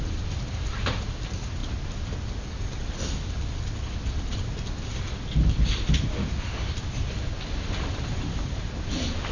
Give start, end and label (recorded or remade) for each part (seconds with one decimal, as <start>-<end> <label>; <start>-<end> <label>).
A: 0.0-9.3 recorded